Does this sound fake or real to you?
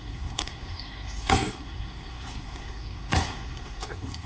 fake